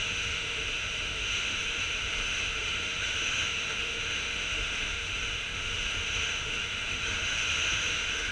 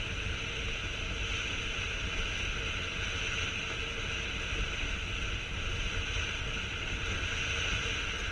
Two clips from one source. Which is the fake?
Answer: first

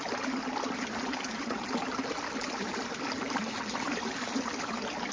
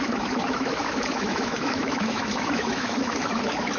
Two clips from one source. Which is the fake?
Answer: second